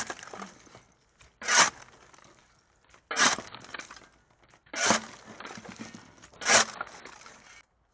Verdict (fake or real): real